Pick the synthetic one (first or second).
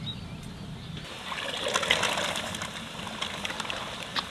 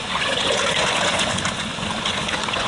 second